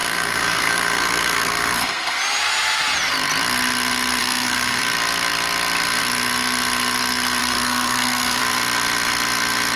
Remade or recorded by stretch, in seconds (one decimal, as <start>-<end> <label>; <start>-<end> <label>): 0.0-2.2 remade; 2.2-4.2 recorded; 4.2-4.8 remade; 4.8-7.4 recorded; 7.4-8.4 remade; 8.4-9.8 recorded